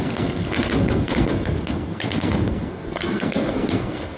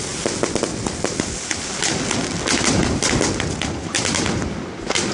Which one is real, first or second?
second